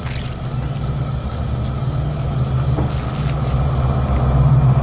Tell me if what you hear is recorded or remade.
recorded